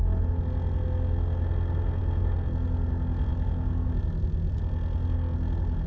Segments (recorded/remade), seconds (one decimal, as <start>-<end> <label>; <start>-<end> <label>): 0.0-3.3 recorded; 3.3-4.0 remade; 4.0-5.9 recorded